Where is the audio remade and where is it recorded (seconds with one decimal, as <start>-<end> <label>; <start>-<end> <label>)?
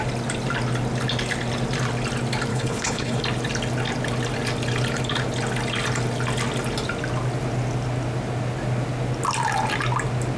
0.0-2.5 recorded; 2.5-3.2 remade; 3.2-10.4 recorded